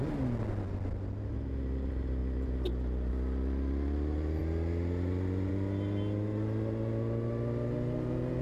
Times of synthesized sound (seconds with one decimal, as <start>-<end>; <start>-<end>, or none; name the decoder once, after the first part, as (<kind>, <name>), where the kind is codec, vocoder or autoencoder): none